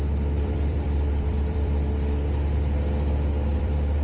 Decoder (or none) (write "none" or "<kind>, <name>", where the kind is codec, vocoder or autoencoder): vocoder, BigVGAN v2